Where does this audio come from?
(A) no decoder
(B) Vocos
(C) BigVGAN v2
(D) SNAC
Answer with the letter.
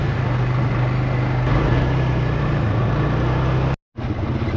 A